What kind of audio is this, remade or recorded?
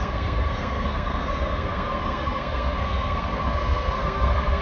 remade